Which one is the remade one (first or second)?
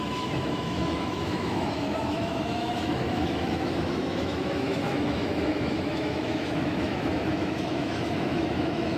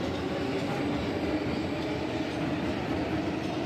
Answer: first